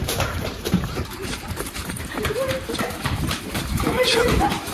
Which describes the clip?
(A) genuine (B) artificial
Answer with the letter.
B